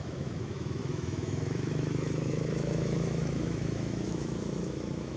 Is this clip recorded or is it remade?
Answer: remade